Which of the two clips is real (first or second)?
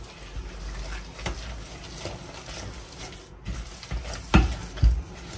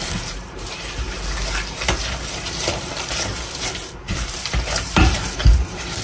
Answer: first